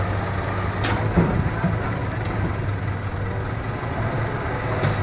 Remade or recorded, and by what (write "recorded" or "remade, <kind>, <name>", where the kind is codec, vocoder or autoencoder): recorded